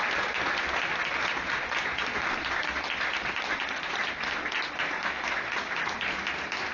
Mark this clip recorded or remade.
recorded